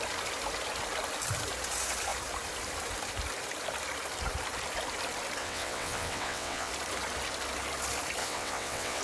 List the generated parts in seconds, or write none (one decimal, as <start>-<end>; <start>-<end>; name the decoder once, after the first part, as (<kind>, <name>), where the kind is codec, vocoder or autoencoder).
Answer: 5.4-6.7 (vocoder, WaveNeXt); 8.2-9.0